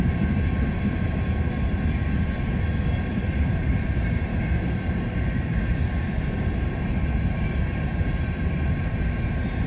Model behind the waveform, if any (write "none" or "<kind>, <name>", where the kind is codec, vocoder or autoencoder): vocoder, BigVGAN v2